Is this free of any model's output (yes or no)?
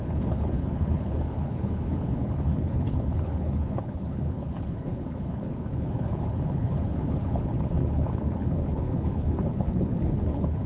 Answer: no